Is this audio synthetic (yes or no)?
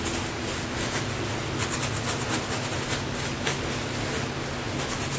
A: no